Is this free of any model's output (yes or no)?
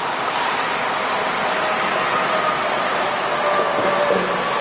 no